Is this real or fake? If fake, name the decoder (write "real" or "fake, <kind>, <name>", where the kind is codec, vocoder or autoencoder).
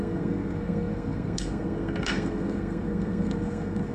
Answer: fake, codec, SNAC